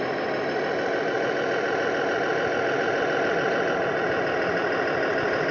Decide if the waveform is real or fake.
real